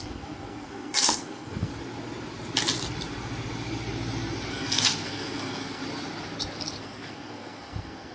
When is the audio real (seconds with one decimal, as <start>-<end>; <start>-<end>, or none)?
1.7-4.5; 5.8-6.8

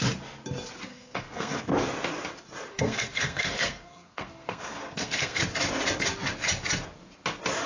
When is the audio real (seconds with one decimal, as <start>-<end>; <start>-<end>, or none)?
0.0-0.9; 1.6-2.7; 5.4-7.7

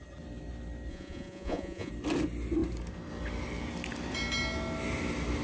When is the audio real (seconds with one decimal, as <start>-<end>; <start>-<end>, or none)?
0.0-0.9; 1.9-5.4

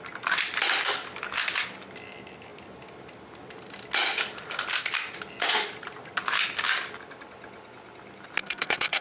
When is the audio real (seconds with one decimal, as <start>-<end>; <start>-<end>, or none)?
0.0-8.4

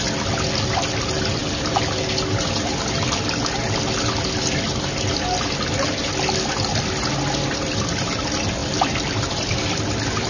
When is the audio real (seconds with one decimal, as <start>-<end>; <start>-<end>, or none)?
0.0-8.6

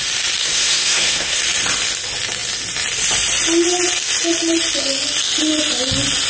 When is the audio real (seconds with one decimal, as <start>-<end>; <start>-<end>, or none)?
0.0-0.4; 1.4-6.3

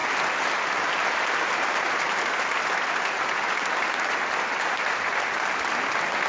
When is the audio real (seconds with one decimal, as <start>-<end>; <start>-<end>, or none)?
0.0-3.7